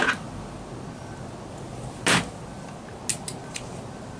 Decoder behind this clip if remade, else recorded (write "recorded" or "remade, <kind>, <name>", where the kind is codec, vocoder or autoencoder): recorded